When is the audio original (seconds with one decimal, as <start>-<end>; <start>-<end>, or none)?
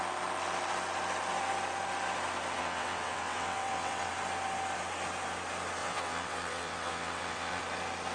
0.0-2.6; 4.1-5.8; 7.6-8.1